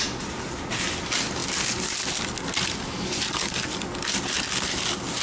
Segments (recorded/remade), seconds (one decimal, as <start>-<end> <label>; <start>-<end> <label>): 0.0-5.2 recorded